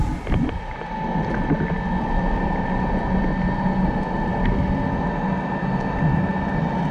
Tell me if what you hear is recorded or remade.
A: recorded